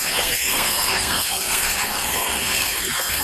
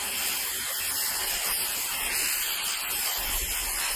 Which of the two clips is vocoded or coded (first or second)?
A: first